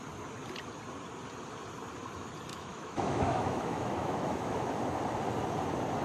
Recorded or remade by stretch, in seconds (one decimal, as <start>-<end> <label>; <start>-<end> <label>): 0.0-2.5 recorded; 2.5-4.7 remade; 4.7-6.0 recorded